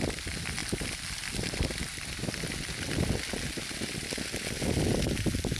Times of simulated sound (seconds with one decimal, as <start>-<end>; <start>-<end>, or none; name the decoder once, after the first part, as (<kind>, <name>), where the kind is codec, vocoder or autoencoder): none